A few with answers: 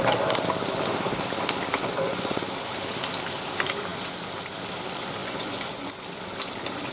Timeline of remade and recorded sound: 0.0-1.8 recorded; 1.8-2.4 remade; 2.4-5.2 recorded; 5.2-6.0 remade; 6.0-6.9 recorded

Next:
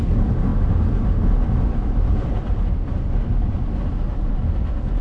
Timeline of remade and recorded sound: 0.0-5.0 recorded

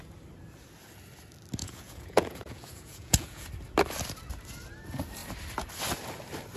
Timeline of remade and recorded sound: 0.0-1.6 recorded; 1.6-3.5 remade; 3.5-6.6 recorded

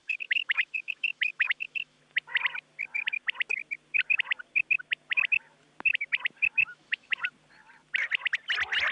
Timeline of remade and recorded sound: 0.0-2.0 remade; 2.0-6.7 recorded; 6.7-7.3 remade; 7.3-8.9 recorded

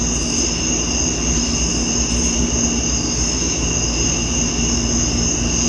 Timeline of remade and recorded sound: 0.0-5.7 recorded

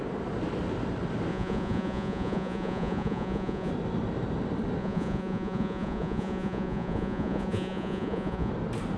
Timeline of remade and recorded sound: 0.0-1.3 recorded; 1.3-3.7 remade; 3.7-4.8 recorded; 4.8-8.5 remade; 8.5-9.0 recorded

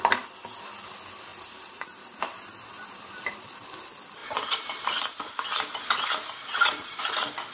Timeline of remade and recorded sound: 0.0-1.3 recorded; 1.3-3.4 remade; 3.4-4.2 recorded; 4.2-7.0 remade; 7.0-7.5 recorded